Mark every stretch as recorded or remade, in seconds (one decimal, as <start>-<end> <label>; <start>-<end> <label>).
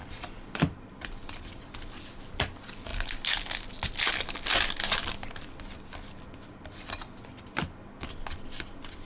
0.0-1.6 remade; 1.6-9.1 recorded